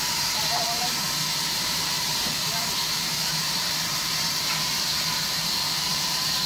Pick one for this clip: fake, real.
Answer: fake